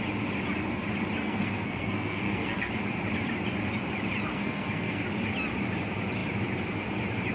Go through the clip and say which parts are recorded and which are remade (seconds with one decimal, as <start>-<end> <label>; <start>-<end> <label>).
0.0-1.2 recorded; 1.2-2.7 remade; 2.7-4.3 recorded; 4.3-5.0 remade; 5.0-7.3 recorded